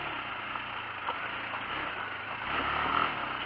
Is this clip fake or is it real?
real